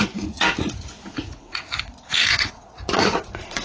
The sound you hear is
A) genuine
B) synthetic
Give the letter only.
B